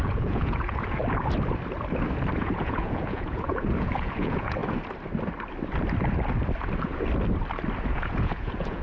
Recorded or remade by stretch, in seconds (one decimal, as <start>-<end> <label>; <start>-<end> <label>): 0.0-1.0 remade; 1.0-2.4 recorded; 2.4-4.6 remade; 4.6-7.9 recorded; 7.9-8.8 remade